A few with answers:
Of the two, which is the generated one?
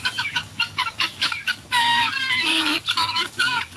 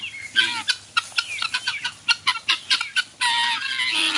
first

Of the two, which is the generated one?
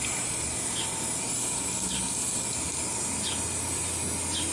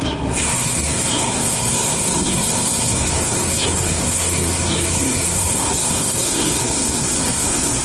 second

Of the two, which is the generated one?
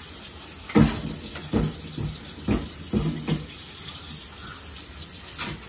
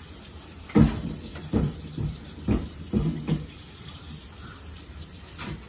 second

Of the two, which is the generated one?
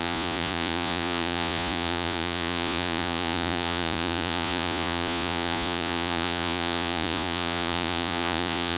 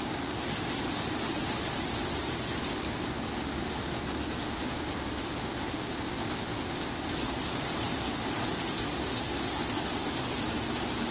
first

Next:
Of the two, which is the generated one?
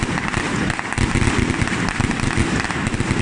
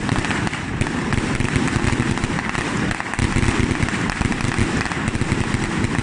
second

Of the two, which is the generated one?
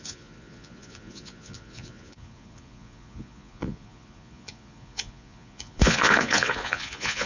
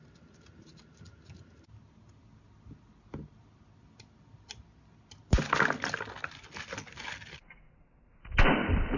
first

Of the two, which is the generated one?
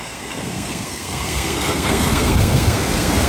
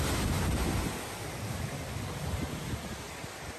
first